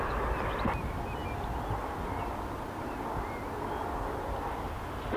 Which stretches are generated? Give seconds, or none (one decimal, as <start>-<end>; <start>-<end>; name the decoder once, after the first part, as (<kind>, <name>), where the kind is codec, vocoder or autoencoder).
none